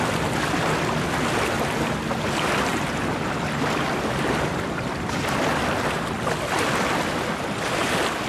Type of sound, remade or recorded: recorded